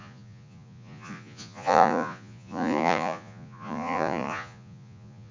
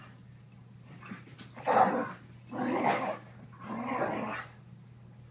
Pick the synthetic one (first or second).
first